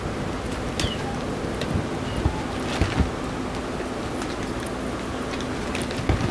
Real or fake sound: real